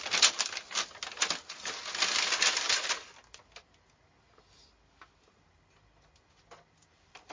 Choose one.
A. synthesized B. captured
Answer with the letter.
B